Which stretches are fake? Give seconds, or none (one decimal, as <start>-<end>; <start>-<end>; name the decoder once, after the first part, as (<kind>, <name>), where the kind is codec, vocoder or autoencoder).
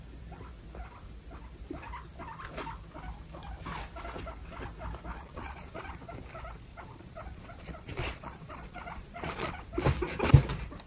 5.1-6.1 (vocoder, Vocos); 6.7-9.7